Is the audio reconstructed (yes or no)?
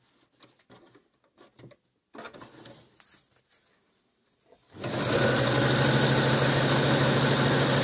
no